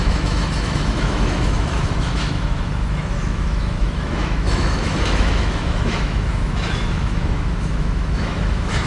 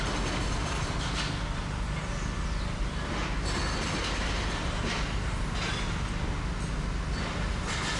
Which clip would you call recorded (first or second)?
second